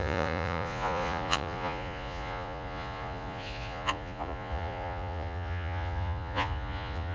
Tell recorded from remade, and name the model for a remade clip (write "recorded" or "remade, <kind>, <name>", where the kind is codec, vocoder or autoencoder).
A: remade, vocoder, Vocos